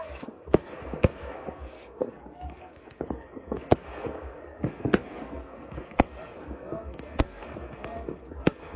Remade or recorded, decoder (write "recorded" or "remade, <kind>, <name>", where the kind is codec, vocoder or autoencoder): remade, codec, SNAC